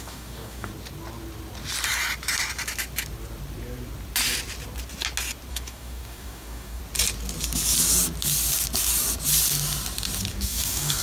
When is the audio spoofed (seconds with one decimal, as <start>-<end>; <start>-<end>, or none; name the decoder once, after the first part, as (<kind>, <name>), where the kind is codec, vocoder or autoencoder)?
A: 0.0-0.7 (codec, DAC); 5.5-6.8; 10.3-11.0